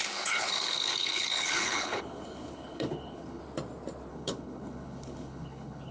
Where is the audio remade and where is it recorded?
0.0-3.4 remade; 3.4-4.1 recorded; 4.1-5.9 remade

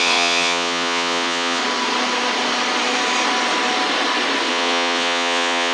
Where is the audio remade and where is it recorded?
0.0-1.6 remade; 1.6-4.5 recorded; 4.5-5.7 remade

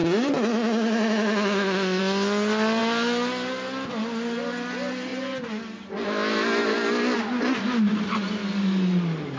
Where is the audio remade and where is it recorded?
0.0-9.4 recorded